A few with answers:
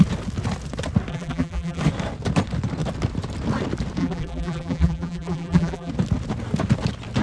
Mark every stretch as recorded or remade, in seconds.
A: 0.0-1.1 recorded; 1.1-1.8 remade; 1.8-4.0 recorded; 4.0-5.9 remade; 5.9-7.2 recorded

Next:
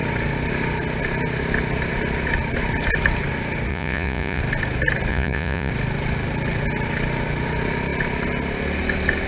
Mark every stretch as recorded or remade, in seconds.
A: 0.0-3.7 recorded; 3.7-4.4 remade; 4.4-5.1 recorded; 5.1-5.7 remade; 5.7-9.3 recorded

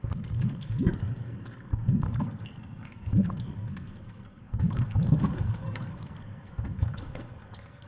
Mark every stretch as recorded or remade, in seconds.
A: 0.0-7.9 remade